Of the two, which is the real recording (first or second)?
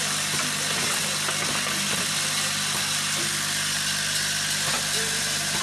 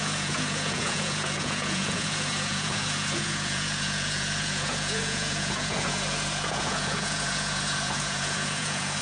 first